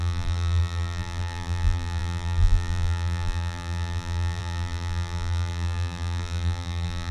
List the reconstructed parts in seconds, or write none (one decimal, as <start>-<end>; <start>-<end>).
0.0-7.1